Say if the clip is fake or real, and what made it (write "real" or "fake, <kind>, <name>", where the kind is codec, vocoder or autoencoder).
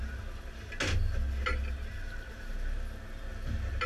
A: real